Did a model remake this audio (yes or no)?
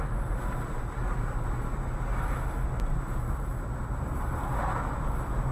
no